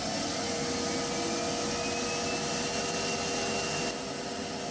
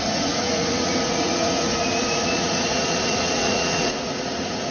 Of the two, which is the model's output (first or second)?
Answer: second